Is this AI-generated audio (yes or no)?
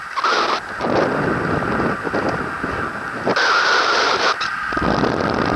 no